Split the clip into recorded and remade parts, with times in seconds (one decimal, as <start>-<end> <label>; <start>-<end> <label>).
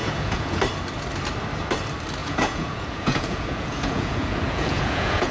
0.0-0.6 remade; 0.6-2.2 recorded; 2.2-5.3 remade